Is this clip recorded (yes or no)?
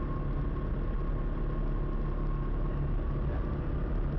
yes